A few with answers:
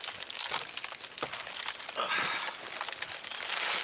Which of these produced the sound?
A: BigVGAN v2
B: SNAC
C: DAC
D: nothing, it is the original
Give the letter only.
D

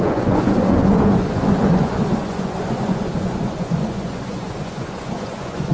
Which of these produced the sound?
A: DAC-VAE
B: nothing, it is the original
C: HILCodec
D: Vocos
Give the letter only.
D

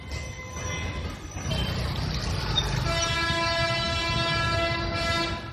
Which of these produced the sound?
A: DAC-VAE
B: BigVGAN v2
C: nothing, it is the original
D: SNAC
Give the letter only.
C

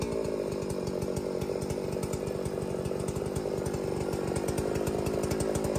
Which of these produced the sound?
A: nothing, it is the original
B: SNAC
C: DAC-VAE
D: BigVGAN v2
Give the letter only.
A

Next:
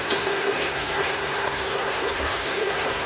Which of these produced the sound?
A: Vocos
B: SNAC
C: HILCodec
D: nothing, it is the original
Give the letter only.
B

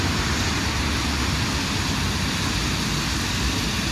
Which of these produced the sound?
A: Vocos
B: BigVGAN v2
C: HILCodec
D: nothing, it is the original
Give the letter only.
D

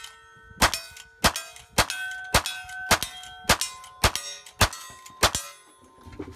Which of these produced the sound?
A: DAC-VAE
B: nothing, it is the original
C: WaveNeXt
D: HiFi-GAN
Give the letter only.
B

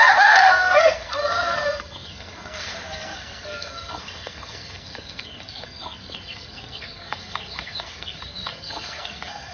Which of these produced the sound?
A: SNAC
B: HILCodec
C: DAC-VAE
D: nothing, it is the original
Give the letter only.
A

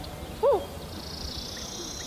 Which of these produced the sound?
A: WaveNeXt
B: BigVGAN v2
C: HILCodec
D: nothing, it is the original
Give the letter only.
D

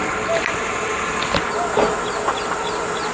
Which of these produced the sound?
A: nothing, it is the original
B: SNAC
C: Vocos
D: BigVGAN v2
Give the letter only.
A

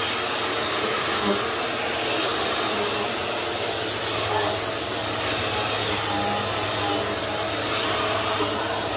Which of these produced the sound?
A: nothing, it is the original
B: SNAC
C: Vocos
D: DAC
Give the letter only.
A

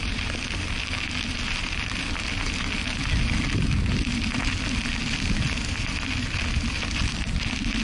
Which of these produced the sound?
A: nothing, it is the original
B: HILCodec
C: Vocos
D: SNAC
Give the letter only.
A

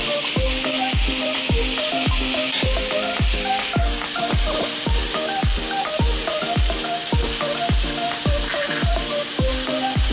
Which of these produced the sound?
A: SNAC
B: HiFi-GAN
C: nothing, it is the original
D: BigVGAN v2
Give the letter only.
D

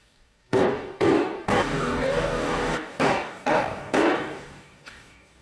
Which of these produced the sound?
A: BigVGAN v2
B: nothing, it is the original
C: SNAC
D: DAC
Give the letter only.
D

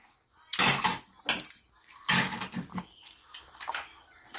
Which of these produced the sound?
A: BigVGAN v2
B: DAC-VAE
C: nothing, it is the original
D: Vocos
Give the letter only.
C